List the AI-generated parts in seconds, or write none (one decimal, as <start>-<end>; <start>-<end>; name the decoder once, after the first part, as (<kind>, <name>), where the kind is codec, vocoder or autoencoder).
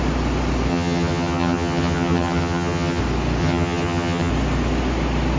0.7-3.0 (vocoder, HiFi-GAN); 3.4-4.3